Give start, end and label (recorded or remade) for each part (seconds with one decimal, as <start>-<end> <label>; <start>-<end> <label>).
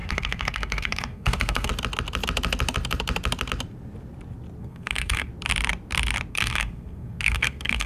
0.0-1.7 remade; 1.7-4.6 recorded; 4.6-5.3 remade; 5.3-6.3 recorded; 6.3-7.9 remade